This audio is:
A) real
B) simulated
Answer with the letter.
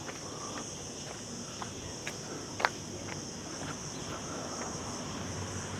A